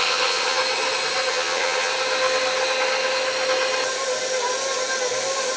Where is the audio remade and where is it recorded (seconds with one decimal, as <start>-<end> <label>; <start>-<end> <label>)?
0.0-0.6 remade; 0.6-1.3 recorded; 1.3-1.9 remade; 1.9-5.6 recorded

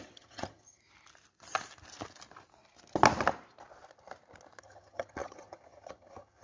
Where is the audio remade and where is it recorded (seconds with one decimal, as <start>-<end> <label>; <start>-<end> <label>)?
0.0-0.8 remade; 0.8-4.6 recorded; 4.6-6.4 remade